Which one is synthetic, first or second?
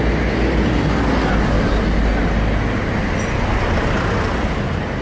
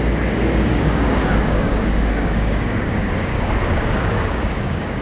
second